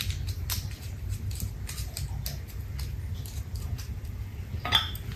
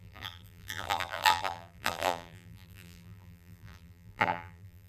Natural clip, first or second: first